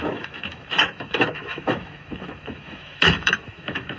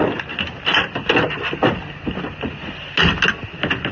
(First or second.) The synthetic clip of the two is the first